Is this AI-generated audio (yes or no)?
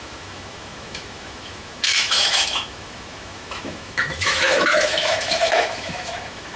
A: yes